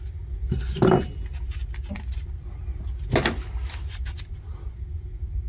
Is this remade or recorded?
recorded